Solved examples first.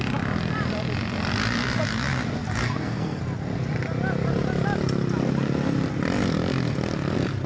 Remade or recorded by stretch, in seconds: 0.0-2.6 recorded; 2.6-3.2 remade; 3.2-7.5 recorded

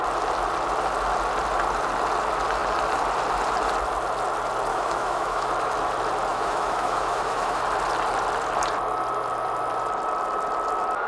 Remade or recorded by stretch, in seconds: 0.0-4.7 recorded; 4.7-5.5 remade; 5.5-6.3 recorded; 6.3-7.6 remade; 7.6-11.1 recorded

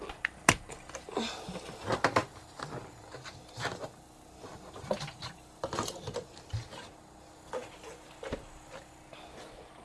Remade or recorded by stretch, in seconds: 0.0-9.8 recorded

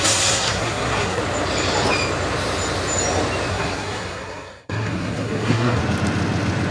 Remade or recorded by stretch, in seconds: 0.0-1.2 remade; 1.2-3.5 recorded; 3.5-5.8 remade; 5.8-6.7 recorded

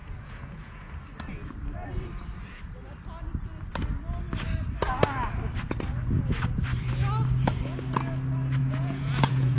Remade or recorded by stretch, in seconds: 0.0-0.9 remade; 0.9-8.6 recorded; 8.6-9.6 remade

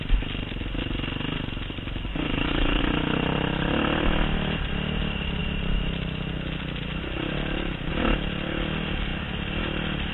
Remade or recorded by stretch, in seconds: 0.0-2.1 recorded; 2.1-2.8 remade; 2.8-10.1 recorded

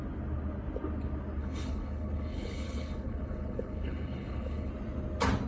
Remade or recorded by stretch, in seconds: 0.0-1.4 recorded; 1.4-4.7 remade; 4.7-5.5 recorded